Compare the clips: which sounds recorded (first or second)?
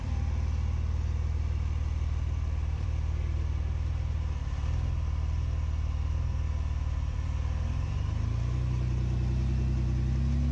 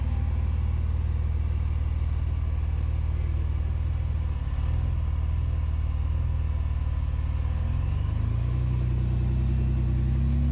second